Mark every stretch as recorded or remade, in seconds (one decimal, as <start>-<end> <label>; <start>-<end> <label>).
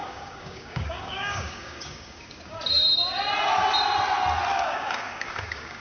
0.0-2.6 remade; 2.6-4.5 recorded; 4.5-5.8 remade